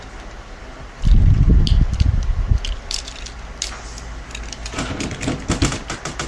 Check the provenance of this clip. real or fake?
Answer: real